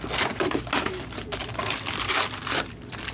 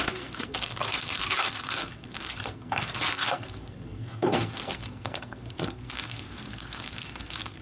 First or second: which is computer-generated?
second